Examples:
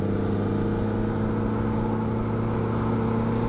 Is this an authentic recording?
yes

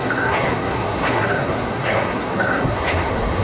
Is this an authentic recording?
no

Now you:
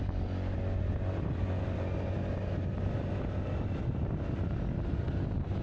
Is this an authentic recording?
yes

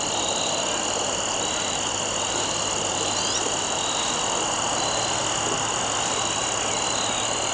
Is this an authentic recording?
yes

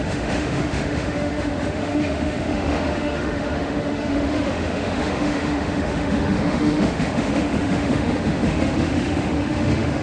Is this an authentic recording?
no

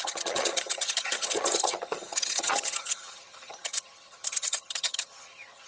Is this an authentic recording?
no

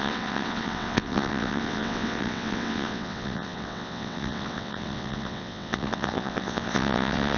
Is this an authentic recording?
no